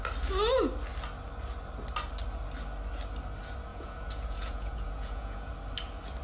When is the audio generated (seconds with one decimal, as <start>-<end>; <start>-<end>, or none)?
3.7-5.5